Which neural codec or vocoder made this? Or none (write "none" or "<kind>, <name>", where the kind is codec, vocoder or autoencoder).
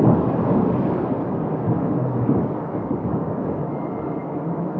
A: codec, DAC